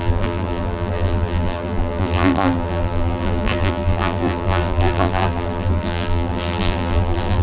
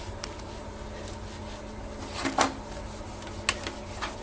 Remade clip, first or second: first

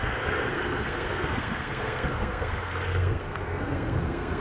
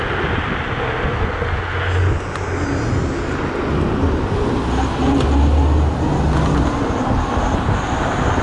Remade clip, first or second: first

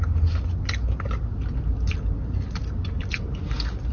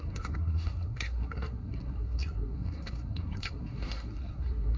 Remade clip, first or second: second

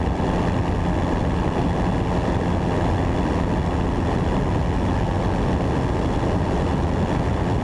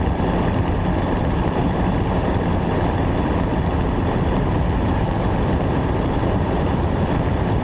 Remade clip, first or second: second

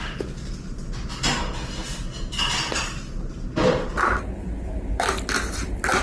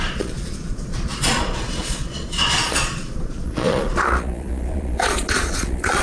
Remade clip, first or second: second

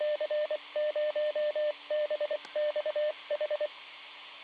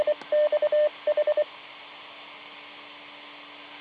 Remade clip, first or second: first